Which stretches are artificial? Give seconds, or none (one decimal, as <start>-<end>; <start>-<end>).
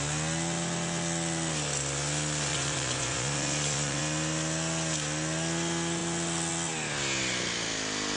2.5-4.0